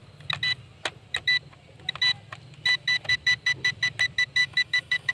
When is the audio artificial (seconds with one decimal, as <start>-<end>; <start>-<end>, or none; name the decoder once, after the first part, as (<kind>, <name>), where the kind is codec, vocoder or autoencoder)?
4.4-5.1 (autoencoder, DAC-VAE)